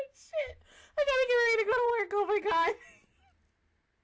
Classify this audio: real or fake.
real